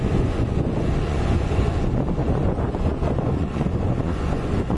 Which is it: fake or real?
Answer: fake